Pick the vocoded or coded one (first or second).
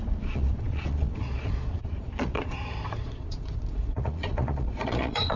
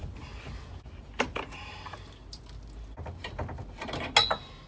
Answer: first